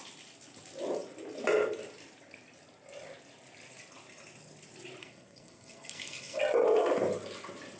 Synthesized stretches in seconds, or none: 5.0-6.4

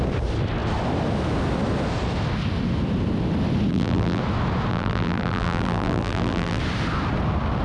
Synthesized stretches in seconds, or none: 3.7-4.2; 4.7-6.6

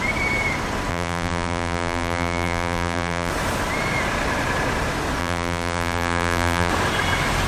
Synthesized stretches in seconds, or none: 0.9-3.3; 5.2-6.7

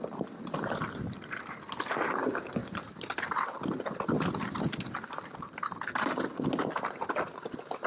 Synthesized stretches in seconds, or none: none

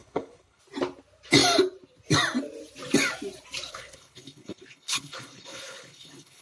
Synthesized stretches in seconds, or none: 0.0-0.6; 3.7-6.4